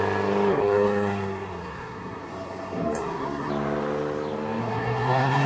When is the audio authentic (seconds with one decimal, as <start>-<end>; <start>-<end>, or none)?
0.0-0.5; 3.5-4.6